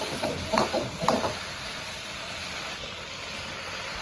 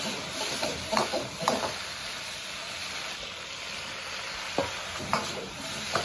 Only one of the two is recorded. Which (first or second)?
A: second